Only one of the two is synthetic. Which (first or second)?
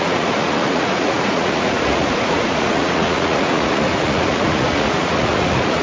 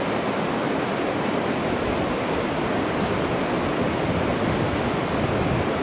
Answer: first